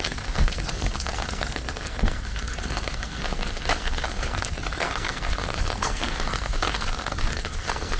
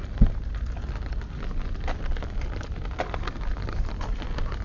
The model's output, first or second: first